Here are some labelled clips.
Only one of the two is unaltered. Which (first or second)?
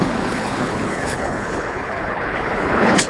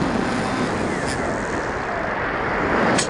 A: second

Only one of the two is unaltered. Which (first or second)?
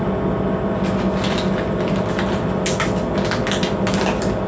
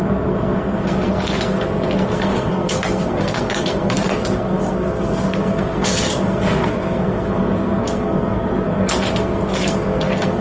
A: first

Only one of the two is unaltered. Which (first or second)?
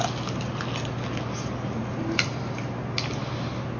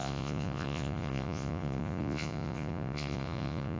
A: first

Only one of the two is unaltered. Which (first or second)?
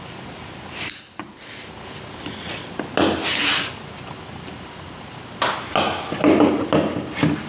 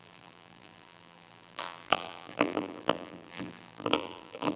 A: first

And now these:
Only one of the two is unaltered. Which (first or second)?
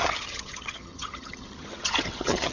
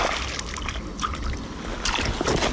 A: second